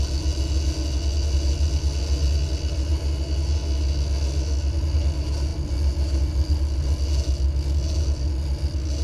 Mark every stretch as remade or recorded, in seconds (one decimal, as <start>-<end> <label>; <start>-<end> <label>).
0.0-9.0 recorded